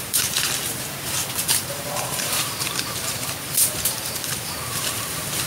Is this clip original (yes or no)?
no